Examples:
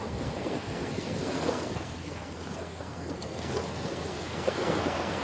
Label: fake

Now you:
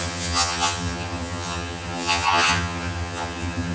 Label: fake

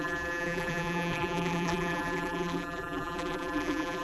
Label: fake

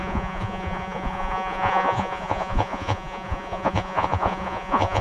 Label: fake